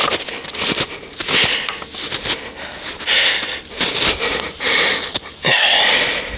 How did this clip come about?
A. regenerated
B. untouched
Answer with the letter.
B